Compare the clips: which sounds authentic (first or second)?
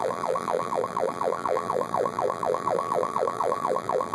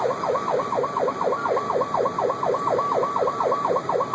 second